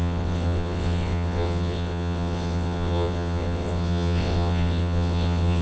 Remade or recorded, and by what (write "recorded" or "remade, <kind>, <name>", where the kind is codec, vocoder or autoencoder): remade, vocoder, WaveNeXt